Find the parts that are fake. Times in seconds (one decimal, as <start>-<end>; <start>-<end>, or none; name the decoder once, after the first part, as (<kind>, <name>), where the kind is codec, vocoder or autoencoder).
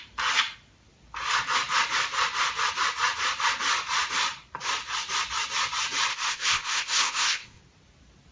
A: 6.1-7.6 (codec, ZipCodec)